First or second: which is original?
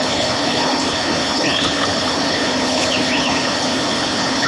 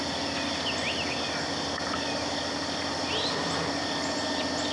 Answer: second